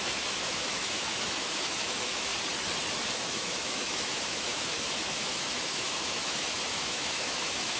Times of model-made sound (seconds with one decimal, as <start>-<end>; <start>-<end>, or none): 0.0-2.3; 3.0-7.8